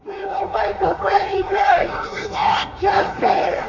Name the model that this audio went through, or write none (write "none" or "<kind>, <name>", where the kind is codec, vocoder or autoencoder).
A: codec, SNAC